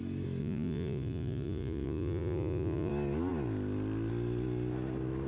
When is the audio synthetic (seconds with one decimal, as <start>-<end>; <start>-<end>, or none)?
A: 0.4-2.9